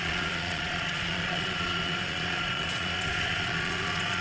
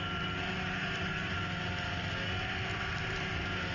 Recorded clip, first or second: second